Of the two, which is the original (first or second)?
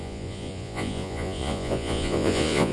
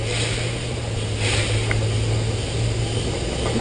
second